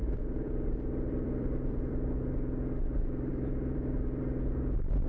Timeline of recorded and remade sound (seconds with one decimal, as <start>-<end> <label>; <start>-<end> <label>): 0.0-2.1 remade; 2.1-3.3 recorded; 3.3-4.2 remade; 4.2-5.1 recorded